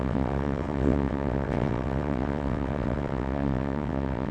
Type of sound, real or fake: fake